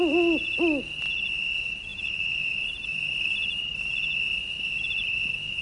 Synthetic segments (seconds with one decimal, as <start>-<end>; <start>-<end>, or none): 1.9-3.8